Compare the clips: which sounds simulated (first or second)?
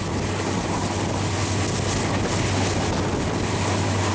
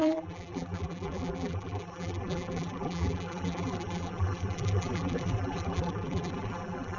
second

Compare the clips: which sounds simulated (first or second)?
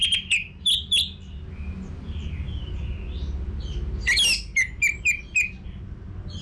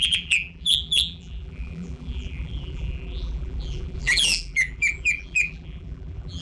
second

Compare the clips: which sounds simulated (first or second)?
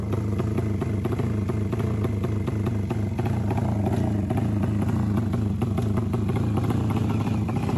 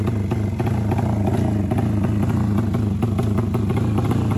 first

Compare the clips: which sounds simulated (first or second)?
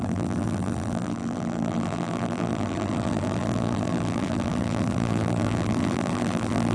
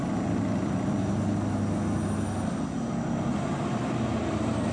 first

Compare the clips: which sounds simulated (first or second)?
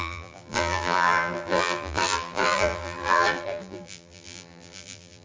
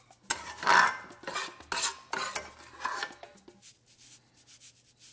first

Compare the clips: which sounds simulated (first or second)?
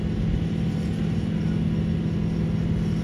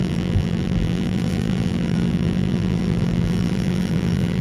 second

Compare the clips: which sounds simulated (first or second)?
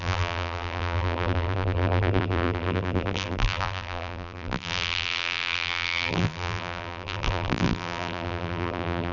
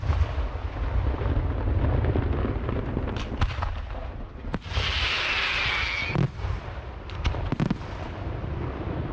first